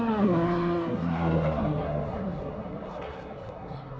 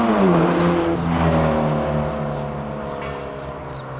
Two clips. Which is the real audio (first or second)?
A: second